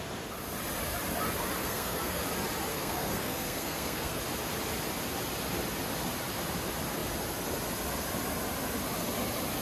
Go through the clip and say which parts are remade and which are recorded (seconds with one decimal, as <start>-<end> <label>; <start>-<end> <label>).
0.0-1.6 recorded; 1.6-2.2 remade; 2.2-2.7 recorded; 2.7-4.2 remade; 4.2-9.6 recorded